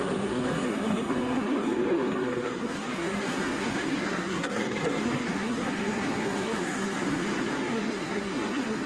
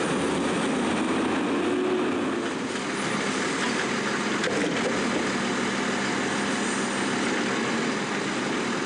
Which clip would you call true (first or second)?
second